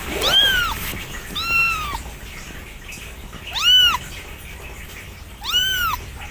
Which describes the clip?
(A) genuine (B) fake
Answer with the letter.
A